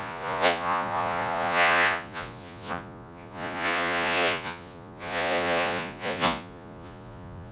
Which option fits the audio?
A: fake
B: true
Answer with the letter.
A